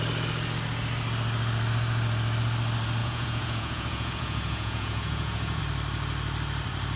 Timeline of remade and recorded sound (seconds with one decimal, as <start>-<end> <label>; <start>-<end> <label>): 0.0-3.0 recorded; 3.0-5.6 remade; 5.6-7.0 recorded